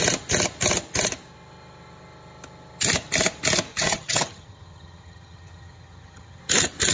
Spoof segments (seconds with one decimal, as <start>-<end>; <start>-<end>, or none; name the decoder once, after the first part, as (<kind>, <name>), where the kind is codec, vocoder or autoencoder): 3.7-6.4 (vocoder, HiFi-GAN)